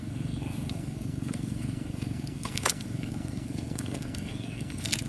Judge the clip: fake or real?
fake